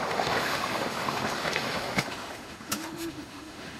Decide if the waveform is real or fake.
fake